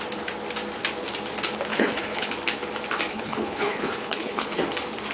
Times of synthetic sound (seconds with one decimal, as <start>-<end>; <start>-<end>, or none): 1.7-2.3; 3.1-4.6